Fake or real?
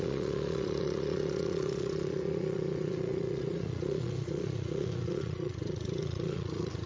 fake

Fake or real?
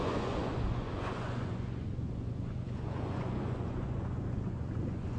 fake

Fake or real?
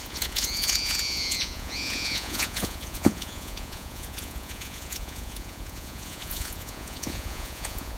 fake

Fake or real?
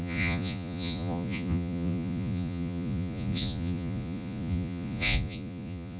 fake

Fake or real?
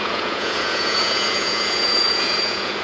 fake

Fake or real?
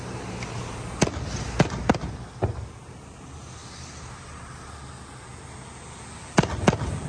real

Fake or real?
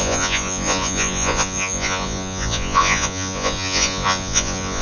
fake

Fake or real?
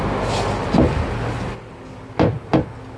real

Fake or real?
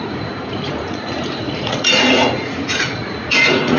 fake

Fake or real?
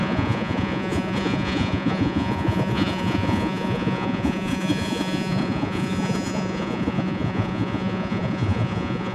fake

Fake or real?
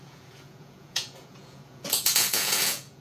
fake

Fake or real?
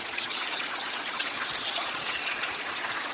fake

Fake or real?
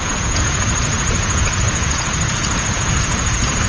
fake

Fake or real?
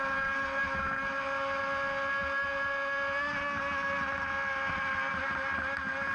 real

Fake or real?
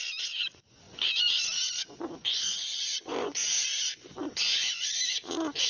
fake